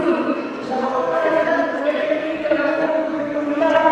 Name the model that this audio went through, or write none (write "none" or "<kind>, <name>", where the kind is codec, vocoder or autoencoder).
codec, SNAC